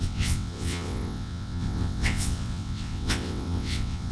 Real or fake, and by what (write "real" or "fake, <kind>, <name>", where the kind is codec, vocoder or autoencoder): fake, vocoder, WaveNeXt